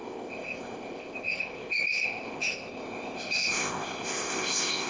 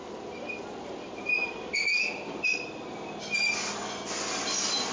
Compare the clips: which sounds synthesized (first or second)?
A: first